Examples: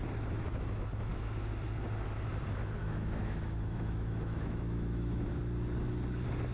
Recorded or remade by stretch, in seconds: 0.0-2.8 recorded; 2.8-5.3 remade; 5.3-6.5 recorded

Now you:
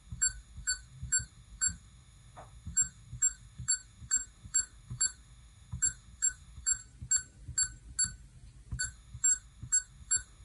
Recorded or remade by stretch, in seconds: 0.0-6.8 remade; 6.8-8.8 recorded; 8.8-10.4 remade